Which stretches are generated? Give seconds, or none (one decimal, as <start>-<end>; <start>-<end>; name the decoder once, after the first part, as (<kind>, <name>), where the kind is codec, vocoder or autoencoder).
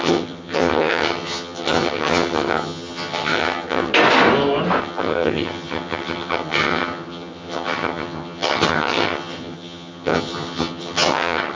0.0-3.9 (vocoder, HiFi-GAN); 4.8-11.5